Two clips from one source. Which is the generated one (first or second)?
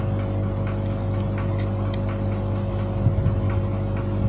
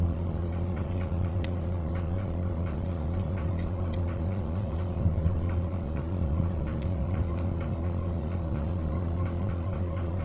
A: second